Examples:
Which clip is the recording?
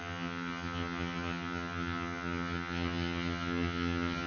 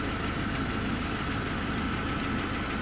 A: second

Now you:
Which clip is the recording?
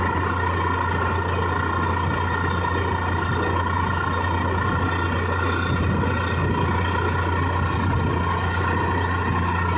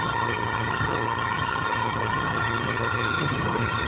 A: first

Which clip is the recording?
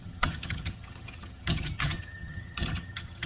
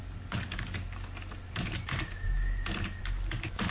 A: second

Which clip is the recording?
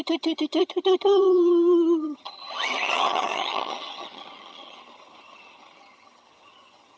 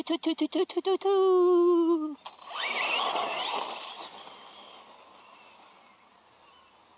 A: second